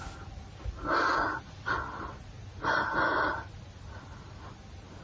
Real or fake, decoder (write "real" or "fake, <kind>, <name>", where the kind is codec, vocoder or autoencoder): real